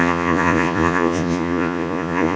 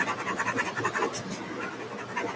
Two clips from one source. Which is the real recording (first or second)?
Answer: second